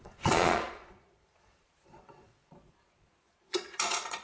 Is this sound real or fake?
fake